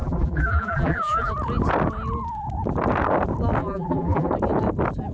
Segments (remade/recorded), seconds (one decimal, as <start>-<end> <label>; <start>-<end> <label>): 0.0-1.3 remade; 1.3-3.6 recorded; 3.6-4.3 remade; 4.3-5.1 recorded